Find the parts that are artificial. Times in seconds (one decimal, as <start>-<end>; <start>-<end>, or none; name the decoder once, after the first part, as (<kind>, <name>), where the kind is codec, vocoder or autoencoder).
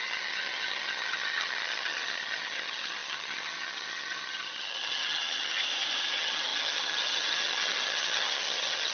0.0-5.6 (vocoder, HiFi-GAN); 6.1-8.9